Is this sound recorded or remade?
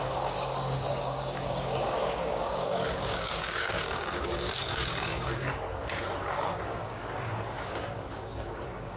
remade